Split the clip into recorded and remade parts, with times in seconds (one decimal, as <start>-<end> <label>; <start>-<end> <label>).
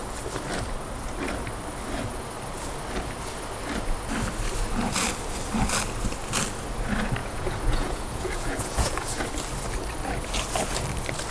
0.0-7.2 recorded; 7.2-9.2 remade; 9.2-11.3 recorded